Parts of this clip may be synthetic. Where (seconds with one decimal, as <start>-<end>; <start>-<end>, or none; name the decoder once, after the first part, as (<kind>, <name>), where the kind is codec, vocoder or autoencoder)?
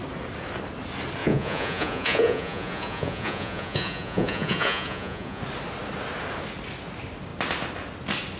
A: 1.2-5.4 (vocoder, Vocos)